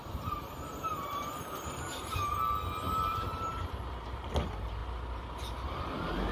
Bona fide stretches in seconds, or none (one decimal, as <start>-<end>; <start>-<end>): 1.2-3.1; 4.3-6.3